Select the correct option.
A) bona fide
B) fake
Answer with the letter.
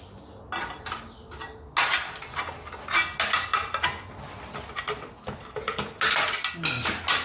A